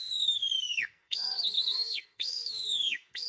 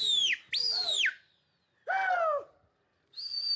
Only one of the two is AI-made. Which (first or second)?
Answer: first